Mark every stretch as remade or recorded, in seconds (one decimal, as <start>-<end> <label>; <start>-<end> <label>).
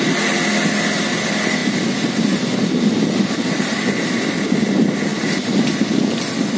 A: 0.0-6.6 recorded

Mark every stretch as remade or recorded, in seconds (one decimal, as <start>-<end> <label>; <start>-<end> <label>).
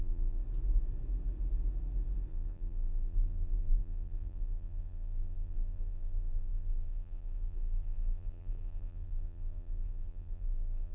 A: 0.0-0.4 remade; 0.4-2.3 recorded; 2.3-10.9 remade